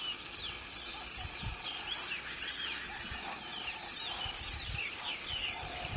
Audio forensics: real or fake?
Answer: real